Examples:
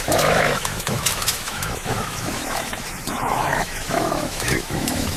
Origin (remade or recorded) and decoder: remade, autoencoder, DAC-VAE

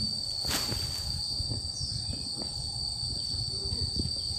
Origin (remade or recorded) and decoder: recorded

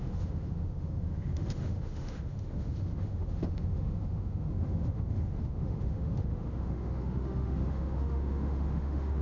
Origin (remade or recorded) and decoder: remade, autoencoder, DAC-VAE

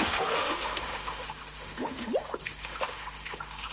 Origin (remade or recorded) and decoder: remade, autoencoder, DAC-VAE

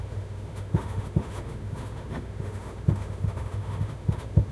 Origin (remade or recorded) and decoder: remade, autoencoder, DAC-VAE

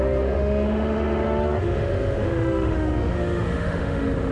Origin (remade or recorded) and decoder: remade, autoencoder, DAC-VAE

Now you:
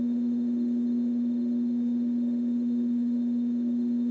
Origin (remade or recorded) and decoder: remade, autoencoder, DAC-VAE